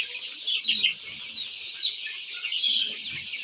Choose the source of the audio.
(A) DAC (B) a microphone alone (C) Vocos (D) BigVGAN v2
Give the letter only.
B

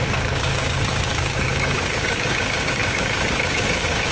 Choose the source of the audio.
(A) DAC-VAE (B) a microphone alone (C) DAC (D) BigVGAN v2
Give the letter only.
C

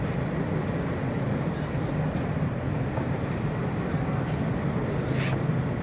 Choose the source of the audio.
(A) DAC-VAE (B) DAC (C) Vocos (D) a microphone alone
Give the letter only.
D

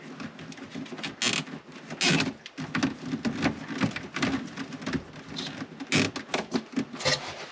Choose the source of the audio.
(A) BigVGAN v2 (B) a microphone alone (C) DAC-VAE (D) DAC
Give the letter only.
B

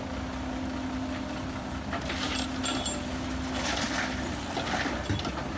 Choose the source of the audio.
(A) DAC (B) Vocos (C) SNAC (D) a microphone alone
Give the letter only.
D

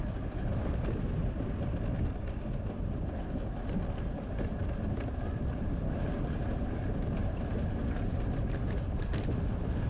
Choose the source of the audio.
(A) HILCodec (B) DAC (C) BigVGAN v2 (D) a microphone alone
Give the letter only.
D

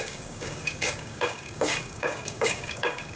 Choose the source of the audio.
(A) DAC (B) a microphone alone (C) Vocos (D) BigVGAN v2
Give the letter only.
A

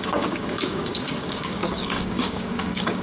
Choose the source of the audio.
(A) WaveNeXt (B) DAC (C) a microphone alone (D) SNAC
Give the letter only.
B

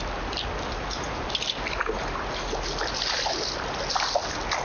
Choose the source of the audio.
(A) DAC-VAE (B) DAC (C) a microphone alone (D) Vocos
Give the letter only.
C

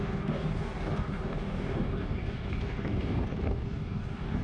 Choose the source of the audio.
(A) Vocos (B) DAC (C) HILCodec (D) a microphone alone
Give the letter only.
B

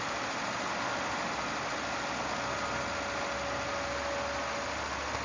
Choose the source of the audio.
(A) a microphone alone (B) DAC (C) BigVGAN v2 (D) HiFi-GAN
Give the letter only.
A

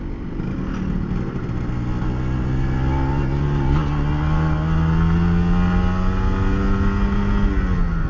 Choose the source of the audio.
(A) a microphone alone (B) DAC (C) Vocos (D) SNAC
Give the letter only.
A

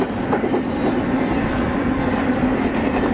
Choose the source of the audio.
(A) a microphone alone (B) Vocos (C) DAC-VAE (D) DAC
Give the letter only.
A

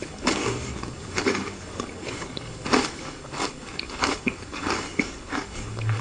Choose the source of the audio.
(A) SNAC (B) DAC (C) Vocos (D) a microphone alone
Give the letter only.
B